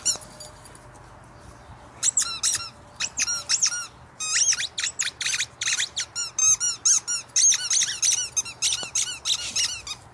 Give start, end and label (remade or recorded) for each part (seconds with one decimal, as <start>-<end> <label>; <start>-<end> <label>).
0.0-10.1 recorded